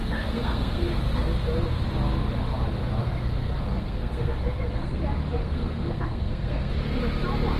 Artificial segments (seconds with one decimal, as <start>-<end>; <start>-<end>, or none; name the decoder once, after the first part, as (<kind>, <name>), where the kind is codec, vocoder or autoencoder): 0.0-1.0 (codec, SNAC); 3.0-5.0; 5.4-6.7